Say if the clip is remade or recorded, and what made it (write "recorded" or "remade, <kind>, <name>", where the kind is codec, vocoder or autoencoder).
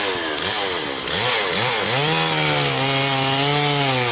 recorded